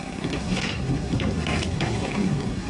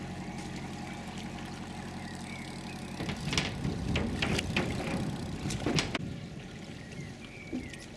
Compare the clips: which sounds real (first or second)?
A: second